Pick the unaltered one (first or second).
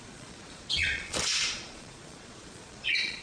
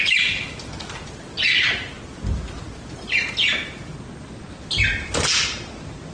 second